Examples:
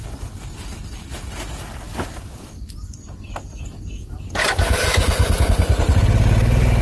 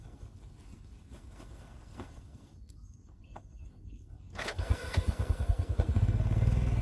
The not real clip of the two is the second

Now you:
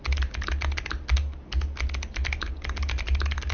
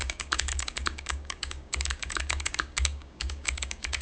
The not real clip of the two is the second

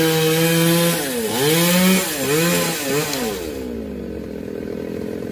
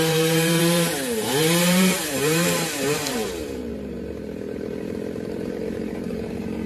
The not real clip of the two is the second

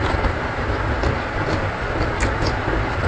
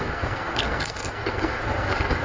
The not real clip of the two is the second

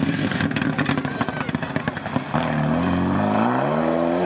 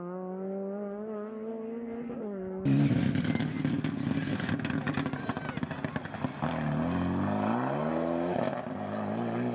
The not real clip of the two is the first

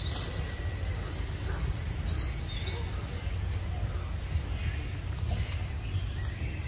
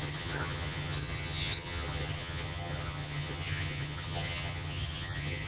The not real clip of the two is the second